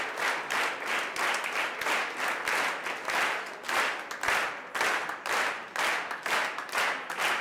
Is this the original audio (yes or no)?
yes